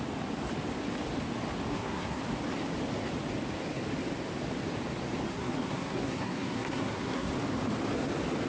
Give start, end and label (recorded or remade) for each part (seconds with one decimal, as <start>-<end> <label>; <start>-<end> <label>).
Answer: 0.0-1.7 recorded; 1.7-2.2 remade; 2.2-5.3 recorded; 5.3-7.3 remade; 7.3-8.5 recorded